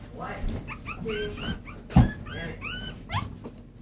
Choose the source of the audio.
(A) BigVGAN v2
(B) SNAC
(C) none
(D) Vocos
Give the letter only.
C